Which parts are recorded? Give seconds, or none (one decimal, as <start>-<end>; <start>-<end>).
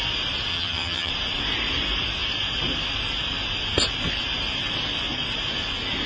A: 0.0-0.5; 1.1-6.1